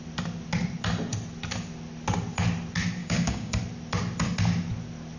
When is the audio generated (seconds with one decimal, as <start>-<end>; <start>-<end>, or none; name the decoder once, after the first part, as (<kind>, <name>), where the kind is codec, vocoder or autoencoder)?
3.0-3.6 (codec, DAC)